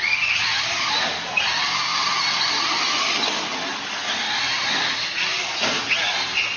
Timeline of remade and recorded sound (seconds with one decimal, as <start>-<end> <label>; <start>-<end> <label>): 0.0-6.6 recorded

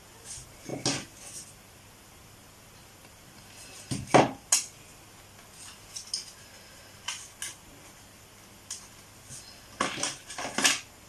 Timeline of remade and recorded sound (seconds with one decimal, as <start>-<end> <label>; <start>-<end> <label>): 0.0-11.1 recorded

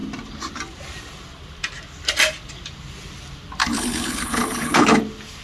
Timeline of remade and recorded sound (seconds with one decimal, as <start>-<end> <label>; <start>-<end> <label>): 0.0-3.6 recorded; 3.6-5.0 remade; 5.0-5.4 recorded

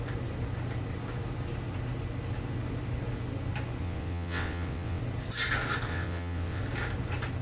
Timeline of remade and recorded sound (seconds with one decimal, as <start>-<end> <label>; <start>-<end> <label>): 0.0-3.8 recorded; 3.8-5.0 remade; 5.0-5.9 recorded; 5.9-6.6 remade; 6.6-7.4 recorded

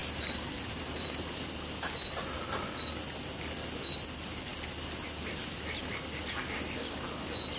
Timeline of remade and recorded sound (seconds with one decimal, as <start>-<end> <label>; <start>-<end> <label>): 0.0-1.4 remade; 1.4-7.6 recorded

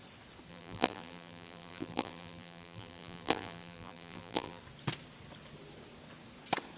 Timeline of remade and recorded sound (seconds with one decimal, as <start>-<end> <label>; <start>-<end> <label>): 0.0-0.5 recorded; 0.5-4.6 remade; 4.6-6.8 recorded